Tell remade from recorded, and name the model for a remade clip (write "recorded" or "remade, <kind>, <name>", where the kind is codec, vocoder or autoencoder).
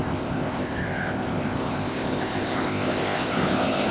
remade, codec, ZipCodec